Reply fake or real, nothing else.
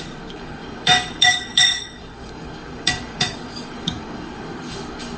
fake